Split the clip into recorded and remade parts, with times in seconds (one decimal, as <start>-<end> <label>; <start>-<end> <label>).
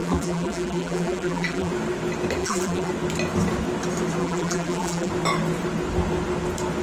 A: 0.0-1.7 remade; 1.7-2.4 recorded; 2.4-2.9 remade; 2.9-4.2 recorded; 4.2-5.1 remade; 5.1-6.8 recorded